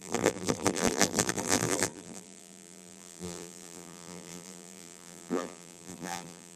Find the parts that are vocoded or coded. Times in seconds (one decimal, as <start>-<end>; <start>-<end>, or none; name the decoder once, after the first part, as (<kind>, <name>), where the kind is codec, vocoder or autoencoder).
0.0-6.6 (vocoder, BigVGAN v2)